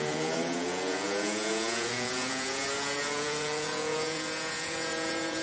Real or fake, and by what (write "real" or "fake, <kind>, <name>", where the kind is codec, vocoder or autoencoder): fake, vocoder, Vocos